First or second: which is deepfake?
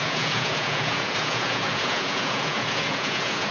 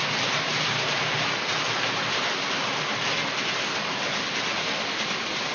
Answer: first